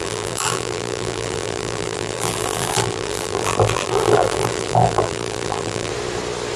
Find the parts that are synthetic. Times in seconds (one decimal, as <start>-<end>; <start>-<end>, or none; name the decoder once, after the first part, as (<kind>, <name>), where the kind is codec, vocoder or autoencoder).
0.0-5.9 (vocoder, BigVGAN v2)